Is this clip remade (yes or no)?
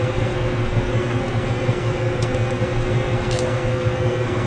yes